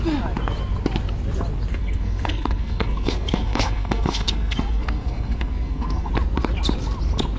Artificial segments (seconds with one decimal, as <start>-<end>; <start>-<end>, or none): 1.7-6.1